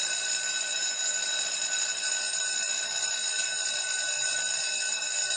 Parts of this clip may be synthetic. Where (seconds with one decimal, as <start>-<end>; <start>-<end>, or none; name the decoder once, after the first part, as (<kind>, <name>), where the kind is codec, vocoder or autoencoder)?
none